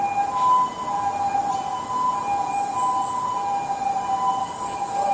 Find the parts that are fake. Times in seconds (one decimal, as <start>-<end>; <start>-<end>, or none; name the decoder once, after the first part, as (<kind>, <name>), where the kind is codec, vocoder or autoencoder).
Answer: 4.4-5.1 (codec, DAC)